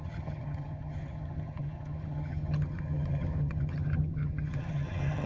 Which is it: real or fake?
fake